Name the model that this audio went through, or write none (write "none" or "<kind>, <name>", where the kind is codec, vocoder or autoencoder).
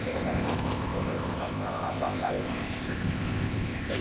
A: codec, ZipCodec